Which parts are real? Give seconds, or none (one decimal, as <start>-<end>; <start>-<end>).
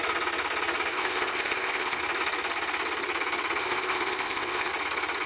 0.0-0.9; 2.0-3.6; 4.7-5.3